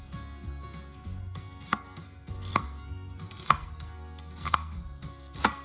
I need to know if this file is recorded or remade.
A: remade